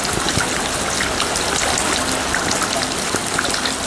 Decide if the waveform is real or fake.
real